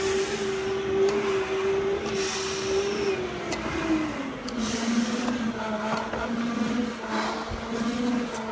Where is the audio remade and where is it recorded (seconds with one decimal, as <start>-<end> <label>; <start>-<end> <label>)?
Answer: 0.0-8.5 recorded